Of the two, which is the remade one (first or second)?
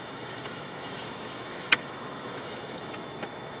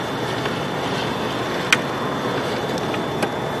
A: first